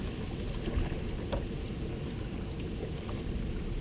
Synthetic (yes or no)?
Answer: no